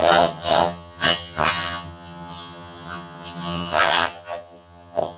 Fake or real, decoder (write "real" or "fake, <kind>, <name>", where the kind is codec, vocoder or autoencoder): fake, vocoder, HiFi-GAN